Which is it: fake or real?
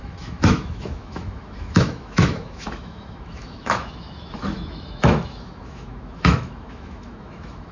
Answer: fake